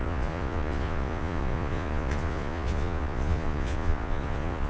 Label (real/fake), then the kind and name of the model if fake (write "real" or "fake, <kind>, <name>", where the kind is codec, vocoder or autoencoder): fake, vocoder, Vocos